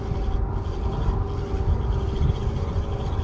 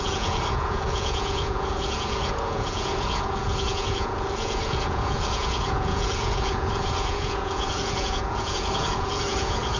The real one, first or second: first